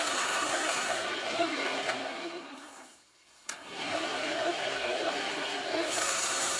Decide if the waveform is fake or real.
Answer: fake